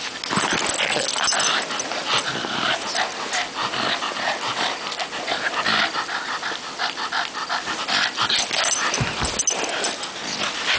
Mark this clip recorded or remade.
recorded